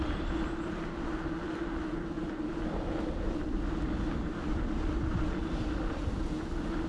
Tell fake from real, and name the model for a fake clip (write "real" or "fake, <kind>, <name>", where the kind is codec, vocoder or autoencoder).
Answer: fake, vocoder, BigVGAN v2